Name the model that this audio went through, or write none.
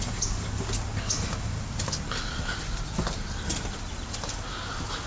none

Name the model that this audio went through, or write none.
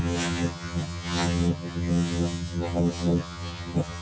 vocoder, HiFi-GAN